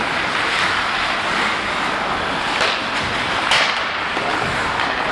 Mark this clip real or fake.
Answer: real